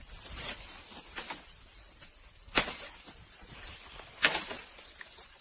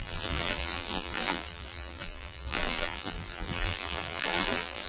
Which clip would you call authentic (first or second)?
first